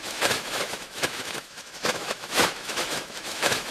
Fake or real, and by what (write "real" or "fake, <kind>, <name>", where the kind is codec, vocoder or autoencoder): fake, autoencoder, DAC-VAE